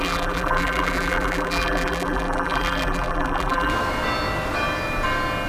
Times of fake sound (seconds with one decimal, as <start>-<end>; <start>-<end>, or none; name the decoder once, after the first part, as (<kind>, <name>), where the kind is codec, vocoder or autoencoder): 0.0-3.7 (vocoder, BigVGAN v2)